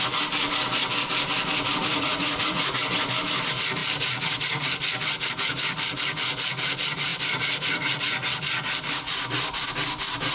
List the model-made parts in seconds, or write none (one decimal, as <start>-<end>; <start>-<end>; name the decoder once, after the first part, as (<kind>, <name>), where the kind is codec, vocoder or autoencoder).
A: 1.9-2.8 (vocoder, Vocos)